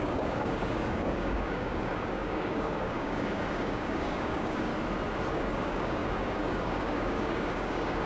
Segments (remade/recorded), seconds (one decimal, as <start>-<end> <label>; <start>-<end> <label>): 0.0-4.7 remade; 4.7-5.3 recorded; 5.3-8.1 remade